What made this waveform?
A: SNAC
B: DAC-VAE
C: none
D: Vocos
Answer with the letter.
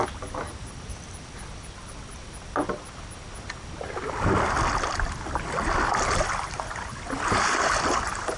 C